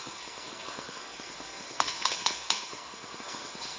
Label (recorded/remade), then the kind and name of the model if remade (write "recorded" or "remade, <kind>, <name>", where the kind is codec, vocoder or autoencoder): remade, codec, SNAC